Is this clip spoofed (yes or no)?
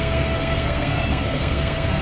yes